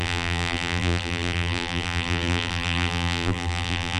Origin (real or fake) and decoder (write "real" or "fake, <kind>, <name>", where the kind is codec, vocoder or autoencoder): fake, vocoder, BigVGAN v2